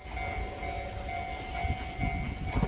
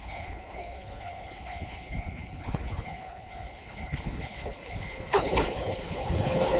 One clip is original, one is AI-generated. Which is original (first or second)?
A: first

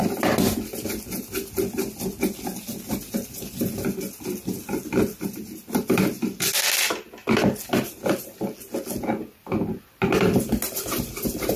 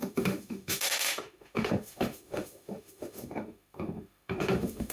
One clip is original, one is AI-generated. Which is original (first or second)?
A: first